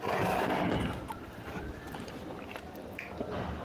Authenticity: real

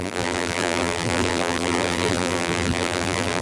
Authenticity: fake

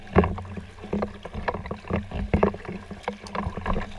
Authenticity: real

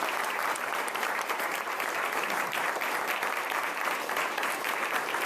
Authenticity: fake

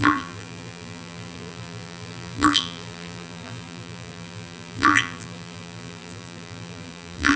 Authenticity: fake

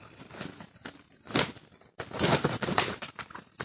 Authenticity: fake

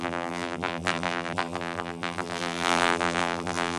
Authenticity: fake